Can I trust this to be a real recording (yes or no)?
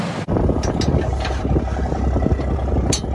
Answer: yes